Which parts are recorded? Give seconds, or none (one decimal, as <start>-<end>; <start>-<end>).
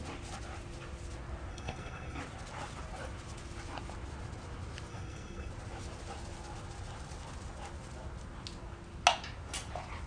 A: 0.0-1.5; 2.2-4.9; 5.5-10.1